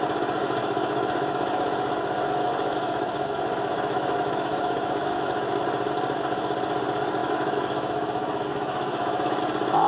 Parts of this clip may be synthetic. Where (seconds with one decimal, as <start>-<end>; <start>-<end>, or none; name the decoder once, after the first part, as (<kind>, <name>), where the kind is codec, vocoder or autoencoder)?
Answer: 0.6-5.6 (autoencoder, DAC-VAE); 7.2-9.4